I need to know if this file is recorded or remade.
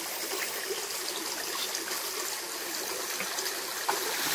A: recorded